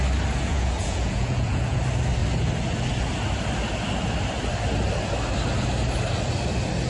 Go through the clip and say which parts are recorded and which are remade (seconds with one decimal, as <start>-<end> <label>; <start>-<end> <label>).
0.0-0.5 recorded; 0.5-1.8 remade; 1.8-6.9 recorded